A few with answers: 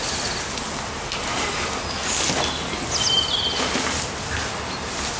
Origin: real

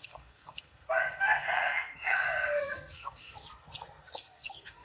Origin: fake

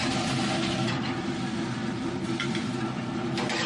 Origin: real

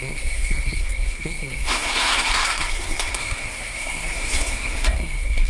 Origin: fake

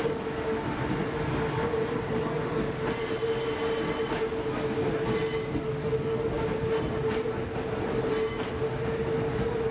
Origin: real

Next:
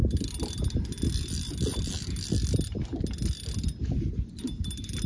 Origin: real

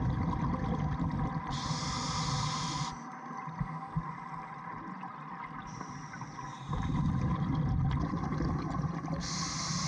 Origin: real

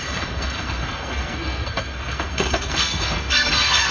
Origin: fake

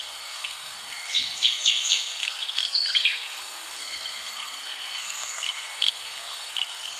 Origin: fake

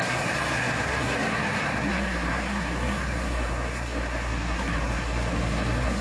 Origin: fake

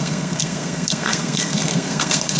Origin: fake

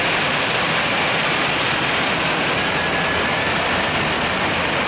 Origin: real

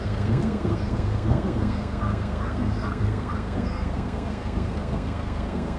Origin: fake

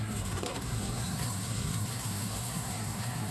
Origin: fake